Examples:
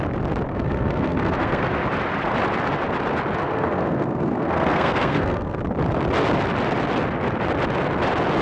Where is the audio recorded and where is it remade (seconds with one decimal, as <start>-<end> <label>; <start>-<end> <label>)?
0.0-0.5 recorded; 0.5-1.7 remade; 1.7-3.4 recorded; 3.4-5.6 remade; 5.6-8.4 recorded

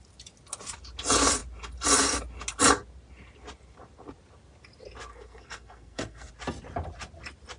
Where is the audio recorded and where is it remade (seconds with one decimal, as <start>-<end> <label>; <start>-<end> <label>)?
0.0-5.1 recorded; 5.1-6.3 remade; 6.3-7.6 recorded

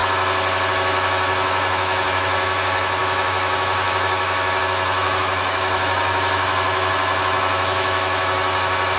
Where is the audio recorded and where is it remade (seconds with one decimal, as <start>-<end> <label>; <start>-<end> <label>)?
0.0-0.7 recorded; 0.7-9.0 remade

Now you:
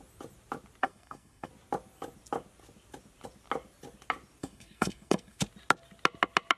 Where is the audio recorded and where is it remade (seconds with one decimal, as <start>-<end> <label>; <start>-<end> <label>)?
0.0-0.8 recorded; 0.8-1.5 remade; 1.5-4.4 recorded; 4.4-5.4 remade; 5.4-6.6 recorded

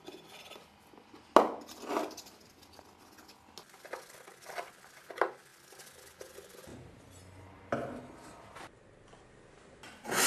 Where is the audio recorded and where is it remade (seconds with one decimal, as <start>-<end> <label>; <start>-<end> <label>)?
0.0-5.5 recorded; 5.5-6.2 remade; 6.2-10.3 recorded

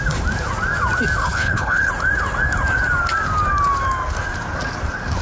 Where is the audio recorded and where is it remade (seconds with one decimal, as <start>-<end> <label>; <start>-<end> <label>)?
0.0-1.2 recorded; 1.2-1.9 remade; 1.9-5.2 recorded

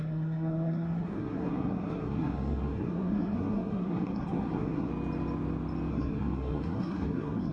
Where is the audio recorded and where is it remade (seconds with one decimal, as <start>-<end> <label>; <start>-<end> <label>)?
0.0-4.9 remade; 4.9-5.9 recorded; 5.9-7.5 remade

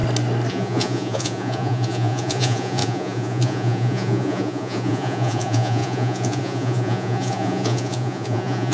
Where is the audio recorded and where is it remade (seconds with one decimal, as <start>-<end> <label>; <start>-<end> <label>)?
0.0-0.5 recorded; 0.5-8.7 remade